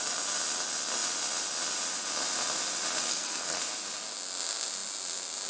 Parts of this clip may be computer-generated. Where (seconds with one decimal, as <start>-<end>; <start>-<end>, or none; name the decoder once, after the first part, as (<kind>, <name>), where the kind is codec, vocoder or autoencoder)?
3.1-3.6 (codec, SNAC)